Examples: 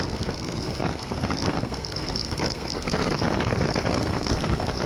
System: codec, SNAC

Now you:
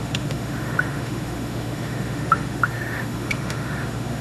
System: autoencoder, DAC-VAE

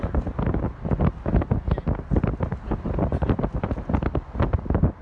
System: none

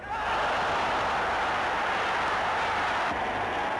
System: none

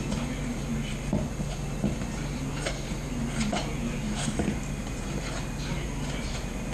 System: none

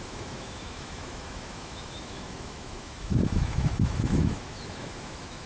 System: autoencoder, DAC-VAE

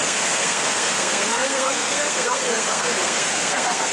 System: codec, SNAC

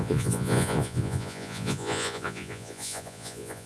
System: vocoder, Vocos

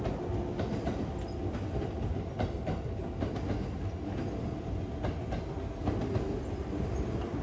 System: none